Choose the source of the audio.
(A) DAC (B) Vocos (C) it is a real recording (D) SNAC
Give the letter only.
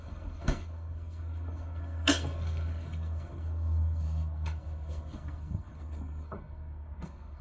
D